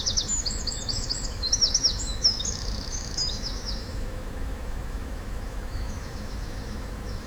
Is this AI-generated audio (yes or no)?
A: yes